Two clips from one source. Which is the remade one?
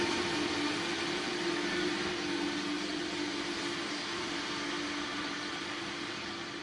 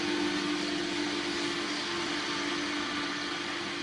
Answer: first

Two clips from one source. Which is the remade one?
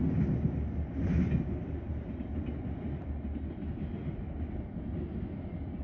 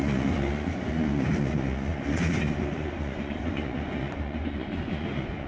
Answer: second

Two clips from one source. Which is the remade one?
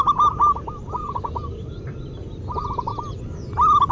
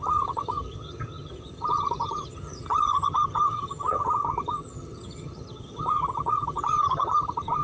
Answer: second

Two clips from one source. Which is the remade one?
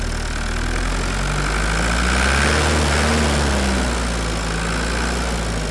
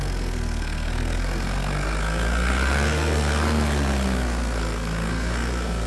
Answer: second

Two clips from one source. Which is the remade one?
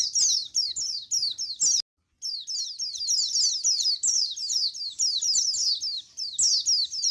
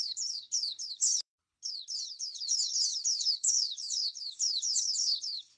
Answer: second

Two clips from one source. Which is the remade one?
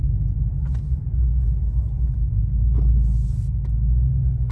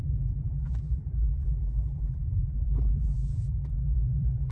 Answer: second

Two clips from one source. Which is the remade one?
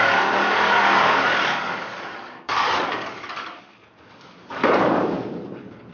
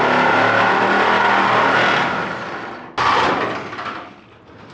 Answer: first